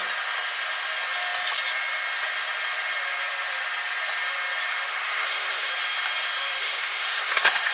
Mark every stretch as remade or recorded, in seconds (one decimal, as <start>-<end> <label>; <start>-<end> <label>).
0.0-4.9 recorded; 4.9-5.7 remade; 5.7-6.6 recorded; 6.6-7.7 remade